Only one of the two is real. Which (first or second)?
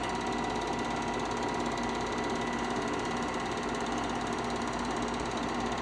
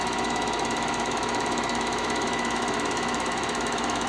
first